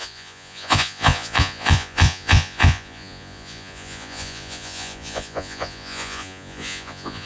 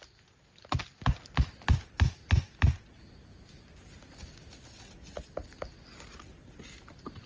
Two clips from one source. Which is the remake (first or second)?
first